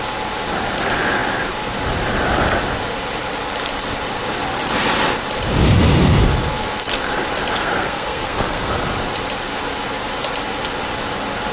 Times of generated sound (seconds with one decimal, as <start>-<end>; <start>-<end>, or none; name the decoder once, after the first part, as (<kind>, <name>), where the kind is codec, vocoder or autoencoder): 7.6-8.7 (codec, SNAC)